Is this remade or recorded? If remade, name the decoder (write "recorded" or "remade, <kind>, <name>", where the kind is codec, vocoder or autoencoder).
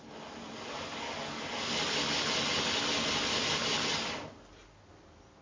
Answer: recorded